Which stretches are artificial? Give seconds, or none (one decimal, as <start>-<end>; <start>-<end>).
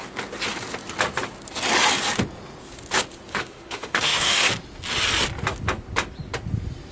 3.3-4.5